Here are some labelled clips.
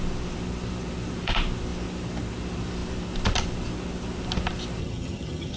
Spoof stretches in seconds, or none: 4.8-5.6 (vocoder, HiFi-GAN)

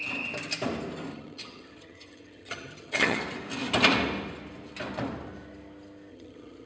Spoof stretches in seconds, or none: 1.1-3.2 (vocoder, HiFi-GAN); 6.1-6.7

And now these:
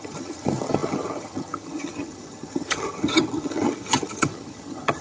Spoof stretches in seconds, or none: 0.0-5.0 (vocoder, HiFi-GAN)